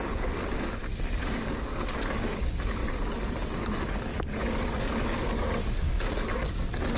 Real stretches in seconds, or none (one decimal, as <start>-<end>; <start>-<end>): 0.8-1.4; 2.8-4.0